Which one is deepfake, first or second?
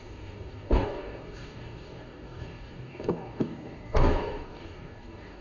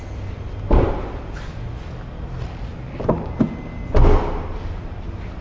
first